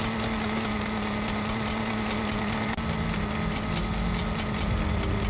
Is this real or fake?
real